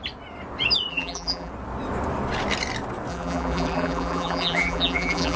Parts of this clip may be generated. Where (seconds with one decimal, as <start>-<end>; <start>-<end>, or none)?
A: 0.9-1.5; 3.1-5.4